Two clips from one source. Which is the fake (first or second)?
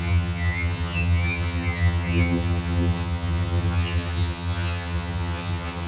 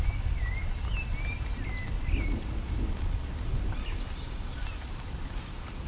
first